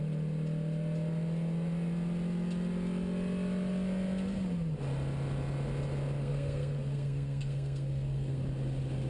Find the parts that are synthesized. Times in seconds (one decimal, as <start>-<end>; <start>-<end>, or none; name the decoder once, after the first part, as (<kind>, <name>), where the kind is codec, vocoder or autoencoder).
6.2-8.4 (codec, SNAC)